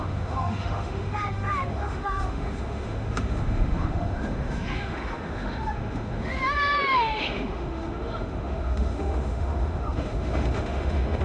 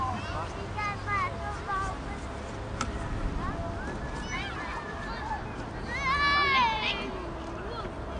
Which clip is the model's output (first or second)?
first